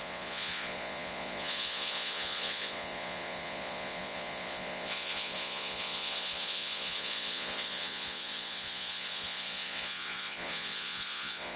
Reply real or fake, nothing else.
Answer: fake